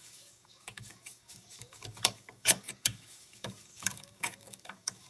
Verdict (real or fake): fake